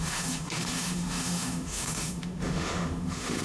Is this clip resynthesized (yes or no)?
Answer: yes